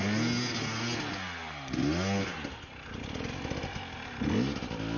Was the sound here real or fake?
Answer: real